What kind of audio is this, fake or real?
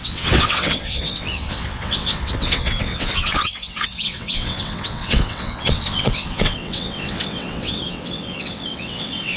fake